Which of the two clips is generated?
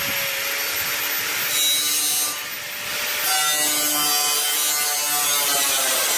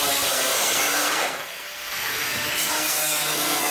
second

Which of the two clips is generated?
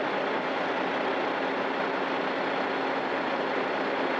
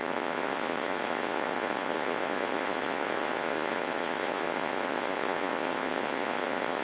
second